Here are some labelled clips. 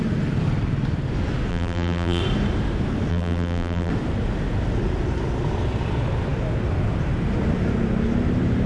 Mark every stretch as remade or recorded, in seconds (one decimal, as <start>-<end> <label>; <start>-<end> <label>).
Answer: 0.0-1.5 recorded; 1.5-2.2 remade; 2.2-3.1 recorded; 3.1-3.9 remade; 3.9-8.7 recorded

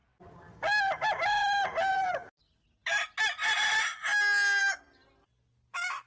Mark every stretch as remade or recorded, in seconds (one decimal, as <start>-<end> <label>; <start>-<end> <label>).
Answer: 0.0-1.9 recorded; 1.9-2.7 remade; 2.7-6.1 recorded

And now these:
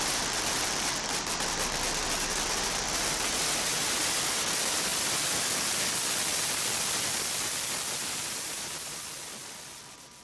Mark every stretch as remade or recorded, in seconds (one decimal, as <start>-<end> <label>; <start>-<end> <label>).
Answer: 0.0-8.0 recorded; 8.0-9.0 remade; 9.0-10.2 recorded